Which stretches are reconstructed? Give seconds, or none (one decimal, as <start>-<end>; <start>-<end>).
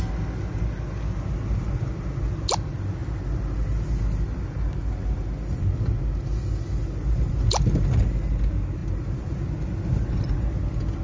none